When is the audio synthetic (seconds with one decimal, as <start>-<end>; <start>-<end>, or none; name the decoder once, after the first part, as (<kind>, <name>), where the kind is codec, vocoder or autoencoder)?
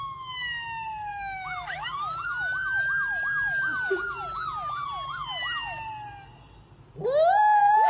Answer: none